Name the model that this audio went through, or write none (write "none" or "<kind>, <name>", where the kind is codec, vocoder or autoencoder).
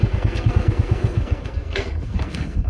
codec, SNAC